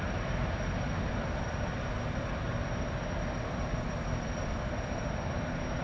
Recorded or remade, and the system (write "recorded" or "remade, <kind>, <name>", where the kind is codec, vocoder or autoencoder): recorded